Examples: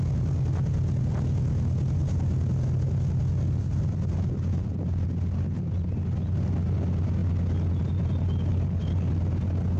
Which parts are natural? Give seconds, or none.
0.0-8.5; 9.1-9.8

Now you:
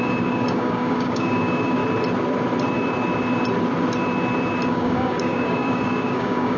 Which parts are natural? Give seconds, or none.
1.8-4.7